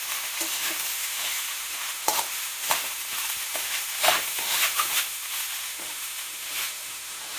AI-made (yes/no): yes